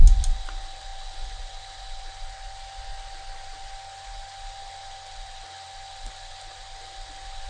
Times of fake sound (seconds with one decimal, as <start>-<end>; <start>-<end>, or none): none